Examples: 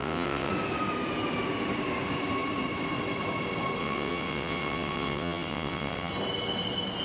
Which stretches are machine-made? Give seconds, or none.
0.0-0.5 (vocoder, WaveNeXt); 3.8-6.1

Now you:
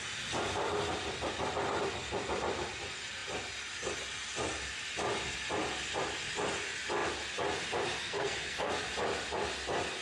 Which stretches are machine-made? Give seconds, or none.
8.0-8.7 (codec, SNAC)

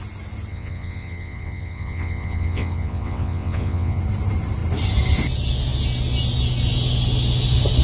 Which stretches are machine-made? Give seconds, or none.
0.5-4.0 (vocoder, WaveNeXt)

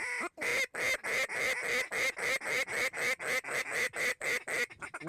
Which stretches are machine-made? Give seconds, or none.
0.0-0.5 (vocoder, BigVGAN v2); 3.6-5.1

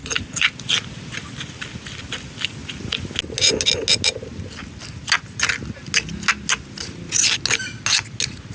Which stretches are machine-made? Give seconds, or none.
none